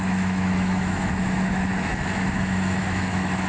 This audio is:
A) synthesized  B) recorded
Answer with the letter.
A